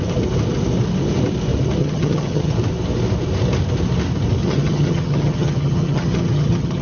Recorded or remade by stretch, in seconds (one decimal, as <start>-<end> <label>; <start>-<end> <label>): 0.0-1.8 recorded; 1.8-2.5 remade; 2.5-4.4 recorded; 4.4-6.8 remade